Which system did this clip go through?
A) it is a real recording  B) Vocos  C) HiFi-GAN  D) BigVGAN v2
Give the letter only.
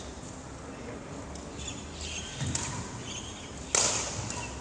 A